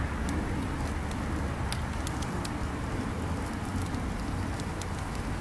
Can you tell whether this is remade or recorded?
recorded